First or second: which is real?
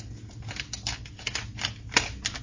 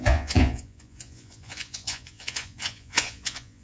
first